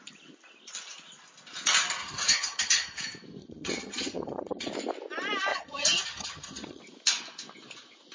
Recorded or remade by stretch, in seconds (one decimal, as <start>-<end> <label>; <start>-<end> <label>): 0.0-2.0 recorded; 2.0-3.0 remade; 3.0-3.4 recorded; 3.4-4.7 remade; 4.7-5.5 recorded; 5.5-6.8 remade; 6.8-8.1 recorded